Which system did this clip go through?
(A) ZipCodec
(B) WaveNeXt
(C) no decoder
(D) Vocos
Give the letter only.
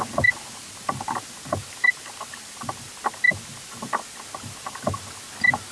C